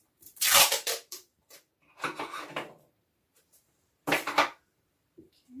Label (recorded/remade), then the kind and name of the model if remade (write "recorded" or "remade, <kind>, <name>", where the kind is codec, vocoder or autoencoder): remade, vocoder, BigVGAN v2